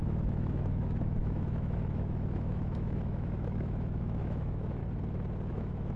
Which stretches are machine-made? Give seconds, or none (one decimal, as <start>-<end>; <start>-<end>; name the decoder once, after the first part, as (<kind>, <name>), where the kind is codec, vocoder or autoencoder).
0.0-4.8 (autoencoder, DAC-VAE); 5.5-6.0